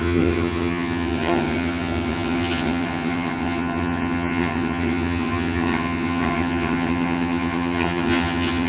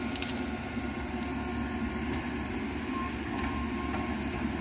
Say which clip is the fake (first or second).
first